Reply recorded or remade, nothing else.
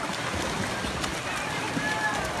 recorded